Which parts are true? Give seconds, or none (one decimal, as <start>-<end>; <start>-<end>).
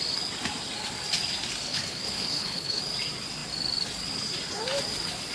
0.0-1.7; 2.8-5.3